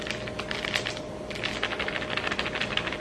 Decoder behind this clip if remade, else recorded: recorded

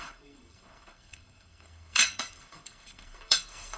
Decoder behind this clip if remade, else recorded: remade, codec, SNAC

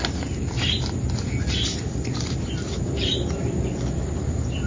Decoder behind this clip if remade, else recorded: recorded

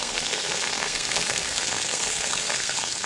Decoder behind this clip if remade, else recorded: remade, codec, SNAC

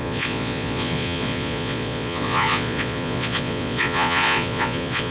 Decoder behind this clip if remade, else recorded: remade, vocoder, Vocos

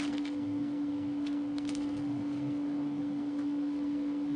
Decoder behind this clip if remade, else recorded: remade, codec, SNAC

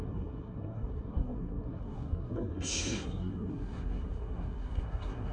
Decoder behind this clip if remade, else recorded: remade, codec, SNAC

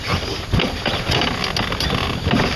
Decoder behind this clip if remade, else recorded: recorded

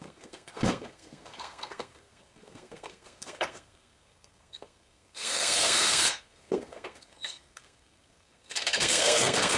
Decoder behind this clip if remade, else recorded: remade, codec, SNAC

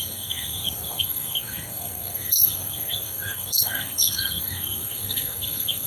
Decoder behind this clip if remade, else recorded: remade, codec, SNAC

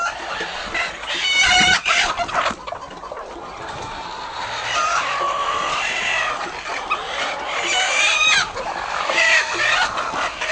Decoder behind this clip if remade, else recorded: remade, vocoder, BigVGAN v2